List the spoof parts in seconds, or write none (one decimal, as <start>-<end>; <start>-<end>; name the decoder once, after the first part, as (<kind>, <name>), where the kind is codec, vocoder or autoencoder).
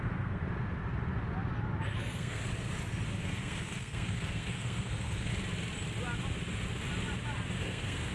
0.0-0.4 (codec, SNAC); 2.0-2.4; 3.2-5.3; 7.6-8.1